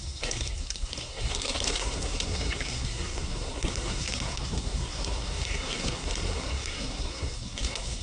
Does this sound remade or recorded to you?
remade